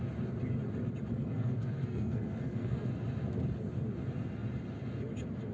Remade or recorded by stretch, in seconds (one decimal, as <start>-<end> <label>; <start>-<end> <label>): 0.0-1.1 recorded; 1.1-2.9 remade; 2.9-5.5 recorded